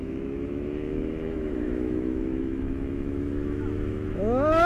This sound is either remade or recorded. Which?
remade